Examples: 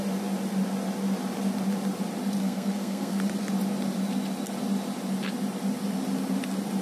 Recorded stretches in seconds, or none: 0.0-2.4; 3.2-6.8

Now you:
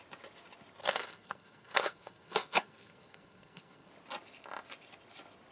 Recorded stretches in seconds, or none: 0.0-0.8; 3.9-5.5

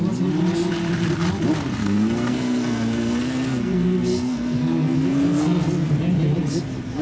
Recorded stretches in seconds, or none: 0.0-1.8; 6.0-7.0

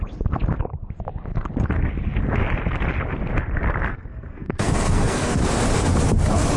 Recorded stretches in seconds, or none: 0.0-3.9; 5.4-6.6

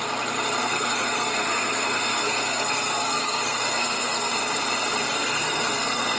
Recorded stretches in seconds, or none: 0.0-0.6; 4.3-5.1

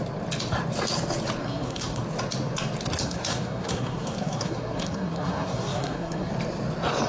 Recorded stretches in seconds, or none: 0.0-1.4; 2.0-3.0; 6.3-7.1